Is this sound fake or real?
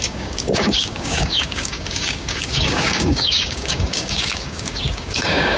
fake